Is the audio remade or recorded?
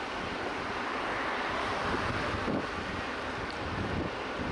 recorded